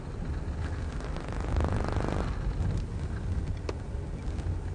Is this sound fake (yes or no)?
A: no